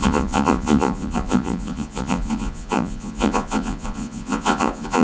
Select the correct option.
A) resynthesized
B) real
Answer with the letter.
A